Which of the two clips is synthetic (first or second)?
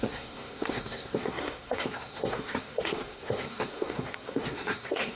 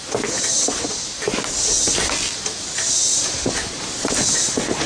first